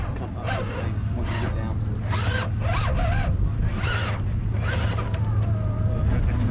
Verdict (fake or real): real